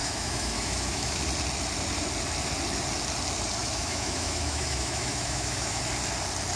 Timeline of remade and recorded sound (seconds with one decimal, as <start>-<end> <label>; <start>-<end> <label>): 0.0-1.2 remade; 1.2-3.6 recorded; 3.6-5.8 remade; 5.8-6.6 recorded

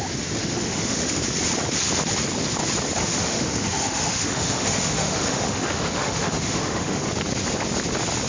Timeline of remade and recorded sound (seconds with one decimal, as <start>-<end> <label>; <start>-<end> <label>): 0.0-0.4 recorded; 0.4-1.2 remade; 1.2-3.0 recorded; 3.0-7.1 remade; 7.1-8.3 recorded

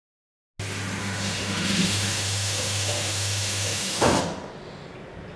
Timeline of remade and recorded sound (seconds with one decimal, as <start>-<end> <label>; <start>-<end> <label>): 0.0-1.0 recorded; 1.0-4.2 remade; 4.2-5.4 recorded